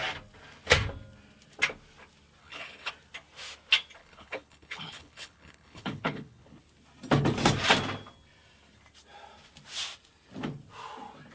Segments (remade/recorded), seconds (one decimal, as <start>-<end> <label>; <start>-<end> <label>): 0.0-2.4 recorded; 2.4-2.9 remade; 2.9-4.0 recorded; 4.0-6.6 remade; 6.6-11.3 recorded